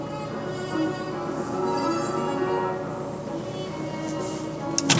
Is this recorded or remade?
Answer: recorded